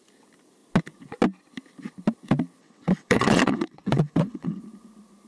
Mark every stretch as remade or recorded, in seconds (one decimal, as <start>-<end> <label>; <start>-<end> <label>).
0.0-2.6 recorded; 2.6-4.6 remade; 4.6-5.3 recorded